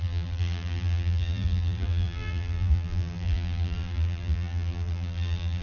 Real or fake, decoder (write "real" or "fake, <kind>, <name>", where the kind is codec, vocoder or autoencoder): fake, vocoder, BigVGAN v2